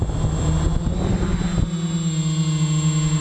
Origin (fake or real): real